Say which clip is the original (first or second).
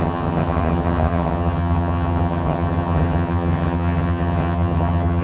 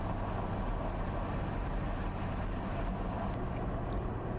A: second